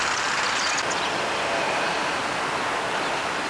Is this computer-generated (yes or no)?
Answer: no